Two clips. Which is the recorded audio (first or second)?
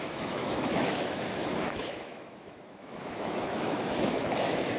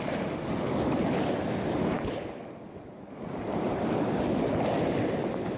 second